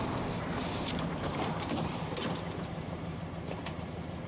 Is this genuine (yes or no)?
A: no